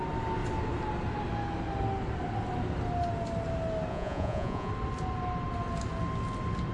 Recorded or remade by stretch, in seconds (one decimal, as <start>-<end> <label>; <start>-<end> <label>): 0.0-3.9 recorded; 3.9-4.7 remade; 4.7-6.7 recorded